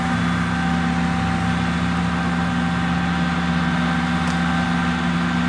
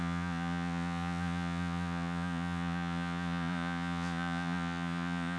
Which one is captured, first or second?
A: first